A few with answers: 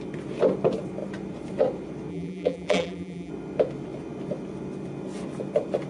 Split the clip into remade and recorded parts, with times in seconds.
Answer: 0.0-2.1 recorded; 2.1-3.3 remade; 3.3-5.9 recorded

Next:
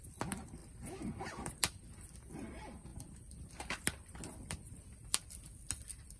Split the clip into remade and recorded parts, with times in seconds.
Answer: 0.0-6.2 recorded